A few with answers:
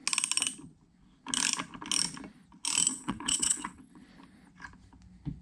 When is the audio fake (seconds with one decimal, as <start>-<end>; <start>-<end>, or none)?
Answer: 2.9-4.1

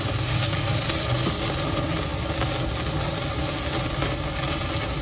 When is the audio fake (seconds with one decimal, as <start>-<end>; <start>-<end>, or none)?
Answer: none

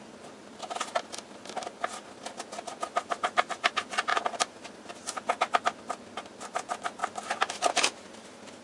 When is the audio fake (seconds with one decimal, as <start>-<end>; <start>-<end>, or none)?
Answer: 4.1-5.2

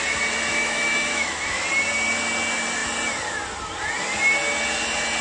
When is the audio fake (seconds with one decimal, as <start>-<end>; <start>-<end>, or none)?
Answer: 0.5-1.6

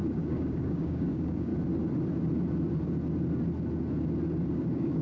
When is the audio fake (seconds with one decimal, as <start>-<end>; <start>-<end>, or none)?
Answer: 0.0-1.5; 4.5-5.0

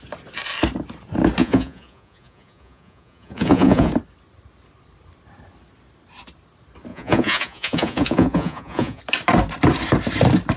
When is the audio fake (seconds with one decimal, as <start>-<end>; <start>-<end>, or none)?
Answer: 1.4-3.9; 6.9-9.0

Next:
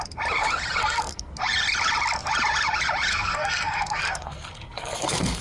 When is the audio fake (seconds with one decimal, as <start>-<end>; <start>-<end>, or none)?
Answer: 0.8-1.3; 3.1-5.4